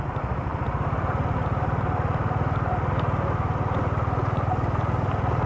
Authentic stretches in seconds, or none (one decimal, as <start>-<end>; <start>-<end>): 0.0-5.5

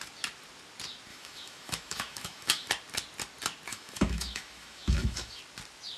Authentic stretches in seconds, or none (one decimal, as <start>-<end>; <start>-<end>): 0.0-1.1; 2.7-3.7; 5.4-6.0

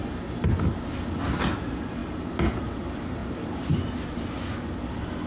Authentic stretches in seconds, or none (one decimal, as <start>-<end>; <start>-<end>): 0.0-5.3

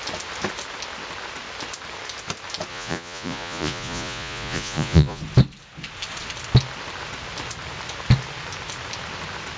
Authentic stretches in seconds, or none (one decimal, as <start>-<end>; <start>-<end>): 0.0-2.7; 5.2-9.6

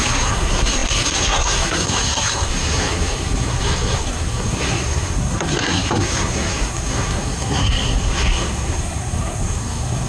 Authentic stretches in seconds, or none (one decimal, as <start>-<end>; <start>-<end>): none